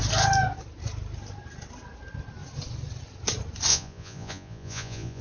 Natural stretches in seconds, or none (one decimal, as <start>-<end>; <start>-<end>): 0.0-3.7